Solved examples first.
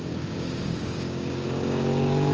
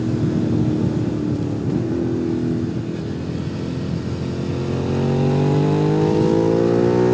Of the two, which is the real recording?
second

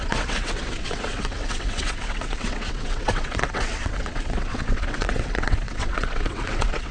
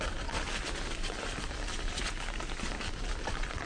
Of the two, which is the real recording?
second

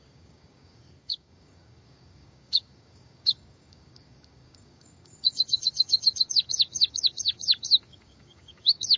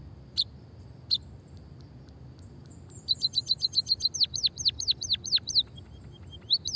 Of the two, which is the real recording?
second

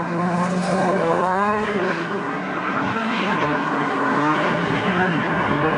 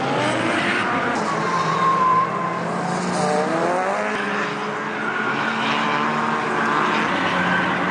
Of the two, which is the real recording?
second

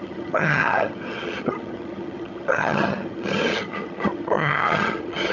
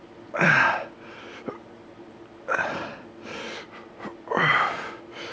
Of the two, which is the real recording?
second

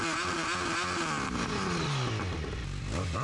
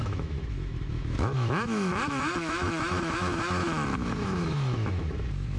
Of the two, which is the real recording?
first